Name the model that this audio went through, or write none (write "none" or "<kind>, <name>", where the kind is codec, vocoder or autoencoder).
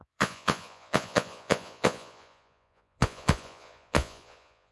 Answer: vocoder, Vocos